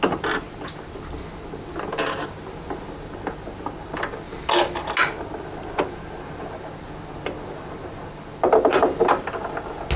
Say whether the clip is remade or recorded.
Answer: recorded